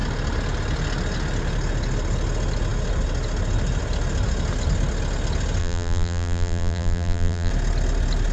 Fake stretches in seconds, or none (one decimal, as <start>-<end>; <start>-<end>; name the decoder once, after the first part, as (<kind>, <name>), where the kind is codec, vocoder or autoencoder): 5.6-7.5 (vocoder, BigVGAN v2)